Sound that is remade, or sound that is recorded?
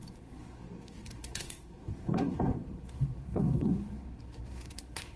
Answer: remade